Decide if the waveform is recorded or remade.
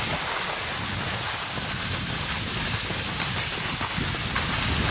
recorded